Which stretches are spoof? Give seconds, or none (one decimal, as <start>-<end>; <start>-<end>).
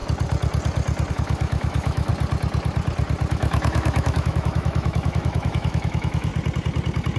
1.1-2.1; 3.3-6.3